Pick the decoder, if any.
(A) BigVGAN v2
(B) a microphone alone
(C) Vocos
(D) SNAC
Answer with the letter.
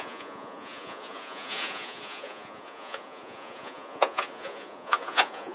C